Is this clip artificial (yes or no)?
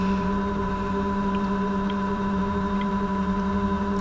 yes